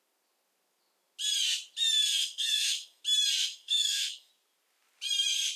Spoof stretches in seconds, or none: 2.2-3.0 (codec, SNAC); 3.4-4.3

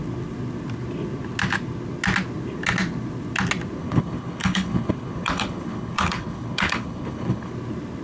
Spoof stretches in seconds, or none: 3.8-7.5 (codec, HILCodec)

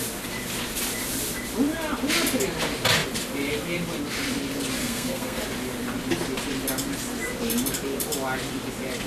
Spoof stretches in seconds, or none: 4.8-5.4 (codec, SNAC)

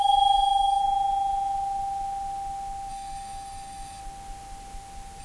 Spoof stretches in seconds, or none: 0.0-0.8 (codec, DAC); 2.9-4.0

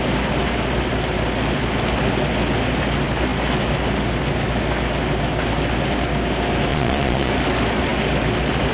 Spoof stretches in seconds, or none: 6.7-7.3 (vocoder, Vocos)

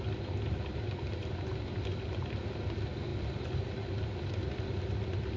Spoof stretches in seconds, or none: none

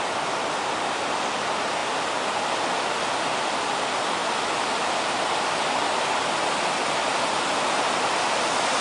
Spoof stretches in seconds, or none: none